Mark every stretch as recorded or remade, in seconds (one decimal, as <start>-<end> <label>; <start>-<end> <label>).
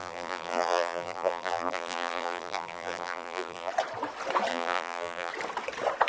0.0-3.7 remade; 3.7-4.5 recorded; 4.5-5.3 remade; 5.3-6.1 recorded